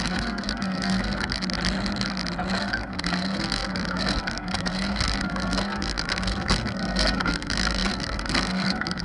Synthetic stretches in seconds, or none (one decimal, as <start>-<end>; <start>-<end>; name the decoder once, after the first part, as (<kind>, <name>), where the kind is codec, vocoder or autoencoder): 0.0-1.4 (codec, SNAC); 2.6-9.0

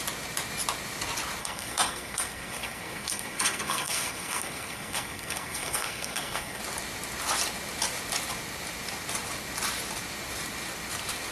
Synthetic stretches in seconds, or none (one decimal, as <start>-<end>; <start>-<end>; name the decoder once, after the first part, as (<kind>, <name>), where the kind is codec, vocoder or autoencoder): 1.4-6.6 (codec, SNAC)

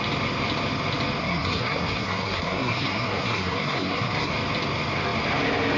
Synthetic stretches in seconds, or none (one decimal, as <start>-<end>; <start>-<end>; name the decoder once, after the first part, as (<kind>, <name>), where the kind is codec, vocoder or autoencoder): 1.2-4.3 (codec, SNAC)

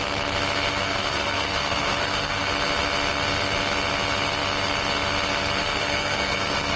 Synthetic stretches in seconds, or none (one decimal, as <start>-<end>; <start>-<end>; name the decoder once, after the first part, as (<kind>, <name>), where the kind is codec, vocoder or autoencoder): 0.7-2.4 (codec, SNAC); 5.6-6.8

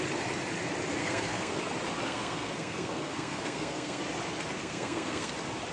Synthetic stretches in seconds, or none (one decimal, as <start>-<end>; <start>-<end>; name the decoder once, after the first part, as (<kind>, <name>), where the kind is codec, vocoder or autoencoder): 1.0-1.6 (codec, SNAC); 2.0-4.0; 4.6-5.3

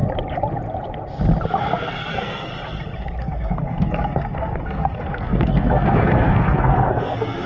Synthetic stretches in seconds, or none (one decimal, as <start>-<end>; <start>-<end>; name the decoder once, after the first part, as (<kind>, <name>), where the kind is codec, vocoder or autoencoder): 1.9-2.5 (codec, SNAC); 3.2-7.5

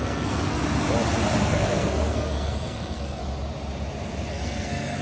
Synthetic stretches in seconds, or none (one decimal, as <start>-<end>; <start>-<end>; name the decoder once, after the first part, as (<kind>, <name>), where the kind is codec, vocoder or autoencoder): 0.0-0.6 (codec, SNAC); 1.4-3.2; 4.3-5.0

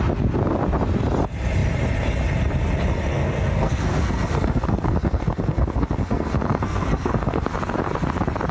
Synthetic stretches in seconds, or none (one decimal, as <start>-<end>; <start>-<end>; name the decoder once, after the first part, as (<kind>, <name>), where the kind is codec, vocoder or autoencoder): 3.1-7.5 (codec, SNAC)